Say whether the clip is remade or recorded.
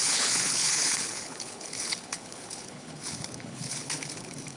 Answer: remade